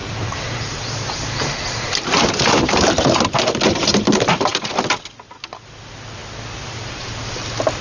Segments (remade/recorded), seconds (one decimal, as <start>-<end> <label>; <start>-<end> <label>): 0.0-2.8 remade; 2.8-7.8 recorded